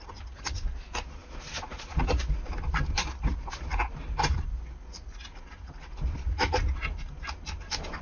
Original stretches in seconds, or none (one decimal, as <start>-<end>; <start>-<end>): 0.0-8.0